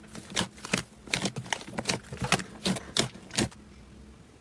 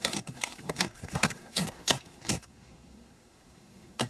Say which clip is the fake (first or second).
second